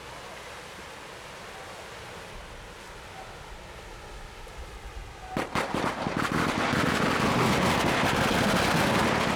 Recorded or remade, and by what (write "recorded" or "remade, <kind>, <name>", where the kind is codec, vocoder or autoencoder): recorded